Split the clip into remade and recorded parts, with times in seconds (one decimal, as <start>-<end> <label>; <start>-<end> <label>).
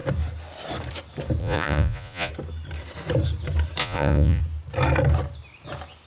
0.0-1.4 recorded; 1.4-2.3 remade; 2.3-3.8 recorded; 3.8-4.4 remade; 4.4-6.1 recorded